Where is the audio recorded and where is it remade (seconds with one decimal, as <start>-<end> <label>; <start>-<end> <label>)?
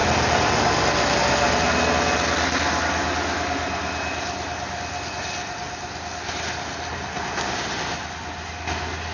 0.0-9.1 recorded